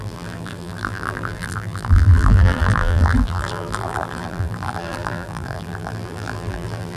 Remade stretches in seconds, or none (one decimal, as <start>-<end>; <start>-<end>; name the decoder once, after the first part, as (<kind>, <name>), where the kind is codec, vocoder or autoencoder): 0.0-7.0 (vocoder, BigVGAN v2)